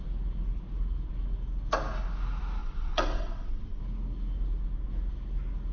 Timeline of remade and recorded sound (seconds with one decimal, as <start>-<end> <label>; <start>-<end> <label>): 0.0-2.6 recorded; 2.6-3.8 remade; 3.8-5.7 recorded